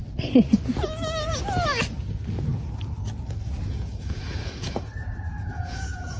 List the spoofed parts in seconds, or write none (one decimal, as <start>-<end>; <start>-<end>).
3.7-4.9; 5.5-6.2